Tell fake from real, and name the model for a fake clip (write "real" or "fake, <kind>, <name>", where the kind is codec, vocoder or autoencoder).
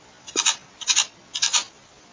real